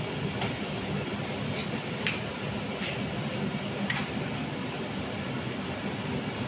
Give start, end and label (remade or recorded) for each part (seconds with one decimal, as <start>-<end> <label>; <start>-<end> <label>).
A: 0.0-6.5 recorded